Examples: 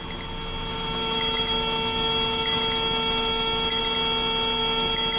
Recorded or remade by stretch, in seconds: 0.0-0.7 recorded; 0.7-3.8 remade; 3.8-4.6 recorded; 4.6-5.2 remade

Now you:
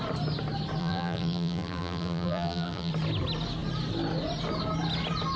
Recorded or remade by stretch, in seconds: 0.0-0.8 recorded; 0.8-2.9 remade; 2.9-5.4 recorded

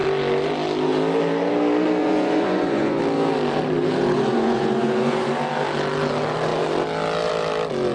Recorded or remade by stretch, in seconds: 0.0-2.0 recorded; 2.0-3.0 remade; 3.0-4.3 recorded; 4.3-5.3 remade; 5.3-7.9 recorded

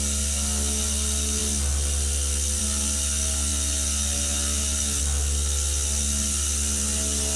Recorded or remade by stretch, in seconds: 0.0-7.4 recorded

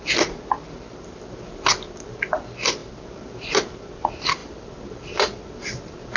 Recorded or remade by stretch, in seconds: 0.0-6.2 recorded

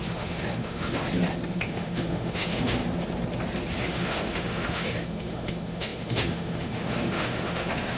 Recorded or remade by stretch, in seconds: 0.0-1.0 remade; 1.0-1.5 recorded; 1.5-2.8 remade; 2.8-3.8 recorded; 3.8-8.0 remade

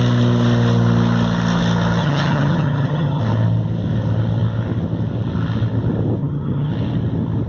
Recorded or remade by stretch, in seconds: 0.0-2.0 recorded; 2.0-3.2 remade; 3.2-6.2 recorded; 6.2-6.7 remade; 6.7-7.5 recorded

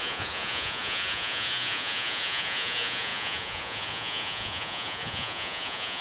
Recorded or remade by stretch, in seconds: 0.0-6.0 remade